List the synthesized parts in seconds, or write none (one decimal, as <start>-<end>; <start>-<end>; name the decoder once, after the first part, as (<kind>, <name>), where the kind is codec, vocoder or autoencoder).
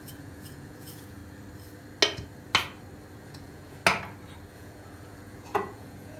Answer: 0.0-1.2 (vocoder, Vocos); 3.2-3.8; 4.5-6.2